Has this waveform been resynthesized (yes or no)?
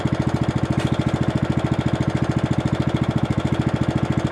no